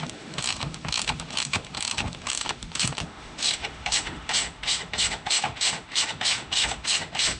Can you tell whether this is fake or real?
fake